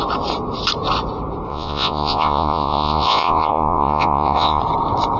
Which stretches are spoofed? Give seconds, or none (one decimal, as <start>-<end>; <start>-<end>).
1.5-4.6

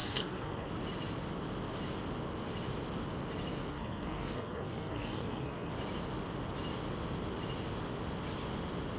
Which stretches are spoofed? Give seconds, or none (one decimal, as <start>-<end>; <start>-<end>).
0.0-0.7; 3.7-5.7

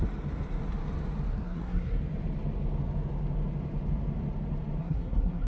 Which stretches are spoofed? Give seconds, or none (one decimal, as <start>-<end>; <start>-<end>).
1.3-2.0; 4.8-5.5

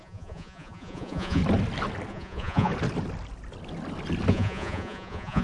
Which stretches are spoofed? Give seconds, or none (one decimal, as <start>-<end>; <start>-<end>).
0.0-1.4; 2.1-2.7; 4.3-5.4

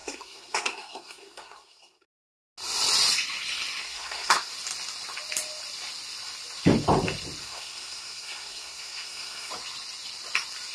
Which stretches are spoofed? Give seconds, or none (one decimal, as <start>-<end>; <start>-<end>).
0.0-2.4; 3.8-4.5; 7.4-9.5

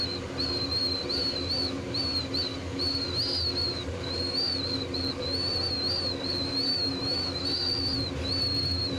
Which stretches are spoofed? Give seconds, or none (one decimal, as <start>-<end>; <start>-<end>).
6.7-7.4